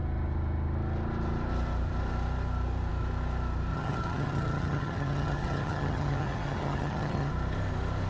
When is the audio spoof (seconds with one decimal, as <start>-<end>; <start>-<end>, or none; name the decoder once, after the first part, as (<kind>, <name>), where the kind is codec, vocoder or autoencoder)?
3.7-7.3 (vocoder, HiFi-GAN)